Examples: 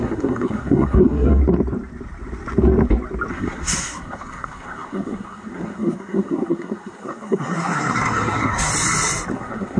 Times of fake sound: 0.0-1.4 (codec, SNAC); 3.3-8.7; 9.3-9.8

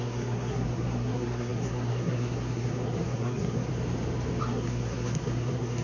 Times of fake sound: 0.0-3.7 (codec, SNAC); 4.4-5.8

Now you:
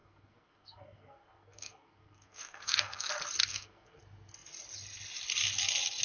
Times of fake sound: 0.0-3.1 (codec, SNAC); 3.5-4.0

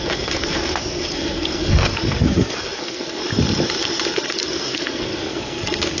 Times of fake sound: 0.0-3.2 (codec, SNAC); 4.1-6.0